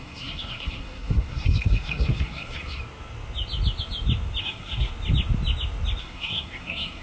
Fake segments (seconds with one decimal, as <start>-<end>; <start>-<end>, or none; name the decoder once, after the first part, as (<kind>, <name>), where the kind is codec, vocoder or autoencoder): 0.0-2.8 (codec, SNAC); 4.4-4.9; 6.0-7.0